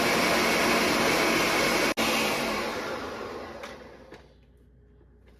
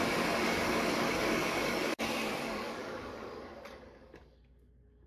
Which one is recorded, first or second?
first